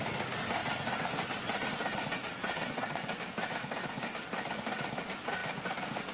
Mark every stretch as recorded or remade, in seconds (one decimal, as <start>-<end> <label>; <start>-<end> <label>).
0.0-2.4 recorded; 2.4-3.2 remade; 3.2-6.1 recorded

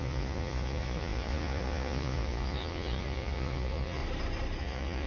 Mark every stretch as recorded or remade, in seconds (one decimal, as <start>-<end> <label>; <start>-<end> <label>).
0.0-4.0 remade; 4.0-4.6 recorded; 4.6-5.1 remade